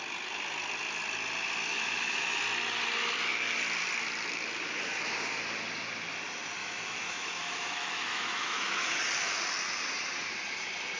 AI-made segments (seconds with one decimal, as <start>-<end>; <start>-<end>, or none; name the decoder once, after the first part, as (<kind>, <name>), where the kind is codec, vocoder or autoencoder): 1.7-2.4 (autoencoder, DAC-VAE); 6.6-9.0